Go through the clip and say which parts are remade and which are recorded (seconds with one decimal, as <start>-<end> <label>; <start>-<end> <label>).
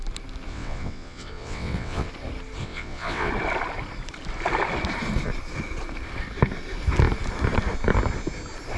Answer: 0.0-0.5 recorded; 0.5-2.1 remade; 2.1-2.6 recorded; 2.6-3.3 remade; 3.3-8.8 recorded